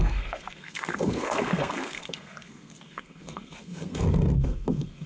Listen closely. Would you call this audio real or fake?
fake